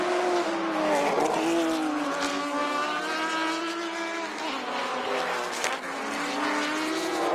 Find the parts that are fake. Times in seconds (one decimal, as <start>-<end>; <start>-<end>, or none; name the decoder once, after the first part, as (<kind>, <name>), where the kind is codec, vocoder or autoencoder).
2.3-3.0 (codec, SNAC); 5.0-6.0